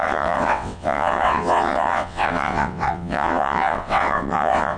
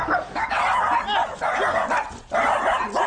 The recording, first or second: second